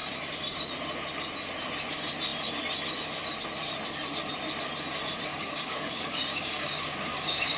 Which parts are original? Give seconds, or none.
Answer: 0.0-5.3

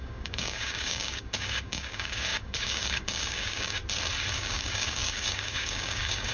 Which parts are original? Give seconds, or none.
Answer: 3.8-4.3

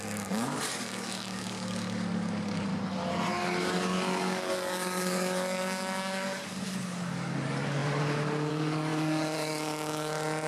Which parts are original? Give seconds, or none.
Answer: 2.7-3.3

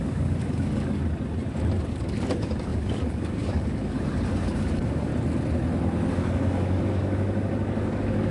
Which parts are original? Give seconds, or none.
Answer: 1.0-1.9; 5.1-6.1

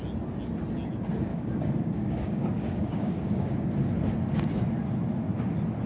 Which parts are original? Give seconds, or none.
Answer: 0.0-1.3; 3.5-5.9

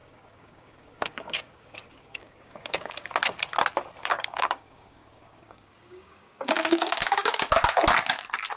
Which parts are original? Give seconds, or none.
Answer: 3.1-4.0; 7.5-8.6

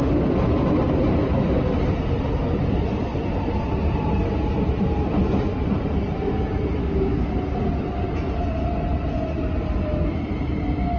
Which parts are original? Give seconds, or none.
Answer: 0.0-6.8; 7.3-11.0

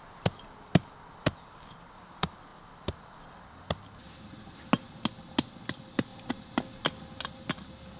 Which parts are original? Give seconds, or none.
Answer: 0.0-8.0